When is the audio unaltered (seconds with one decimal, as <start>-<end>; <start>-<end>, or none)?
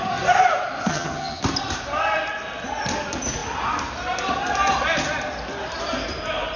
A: 0.0-0.9; 1.4-6.6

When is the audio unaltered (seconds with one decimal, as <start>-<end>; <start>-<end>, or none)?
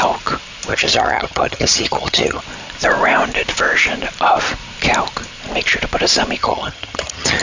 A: 0.0-0.7; 2.4-6.4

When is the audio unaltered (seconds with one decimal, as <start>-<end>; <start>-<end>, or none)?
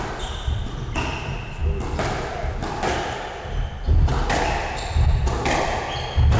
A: 0.0-6.4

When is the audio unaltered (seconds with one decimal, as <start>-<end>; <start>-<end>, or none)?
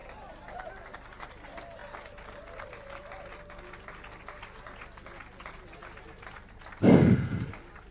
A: 0.0-7.9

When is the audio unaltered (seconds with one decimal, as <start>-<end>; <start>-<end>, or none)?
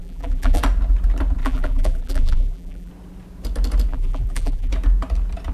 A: 0.6-1.4; 2.9-3.9; 4.7-5.5